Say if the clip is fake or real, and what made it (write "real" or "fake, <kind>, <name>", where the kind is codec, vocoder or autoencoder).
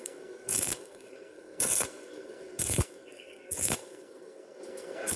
fake, codec, SNAC